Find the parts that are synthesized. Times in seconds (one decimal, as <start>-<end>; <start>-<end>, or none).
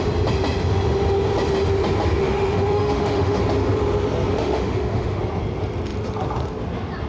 2.2-3.4; 4.3-5.2